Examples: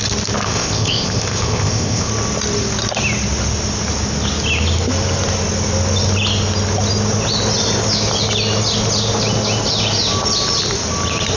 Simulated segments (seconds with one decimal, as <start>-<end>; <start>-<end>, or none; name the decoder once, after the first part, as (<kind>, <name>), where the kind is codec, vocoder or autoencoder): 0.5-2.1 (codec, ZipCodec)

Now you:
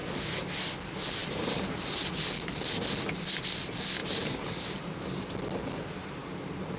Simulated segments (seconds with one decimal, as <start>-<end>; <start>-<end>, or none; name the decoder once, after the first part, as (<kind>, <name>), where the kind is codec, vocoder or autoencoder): 0.0-0.6 (vocoder, BigVGAN v2); 1.2-2.2; 4.0-5.3

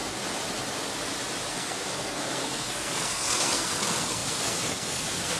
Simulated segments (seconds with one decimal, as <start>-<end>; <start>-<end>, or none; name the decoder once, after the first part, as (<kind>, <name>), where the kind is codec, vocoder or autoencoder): 1.5-5.4 (codec, SNAC)